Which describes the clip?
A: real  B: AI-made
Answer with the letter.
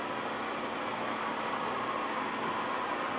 A